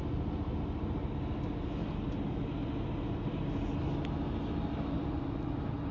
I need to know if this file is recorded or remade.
recorded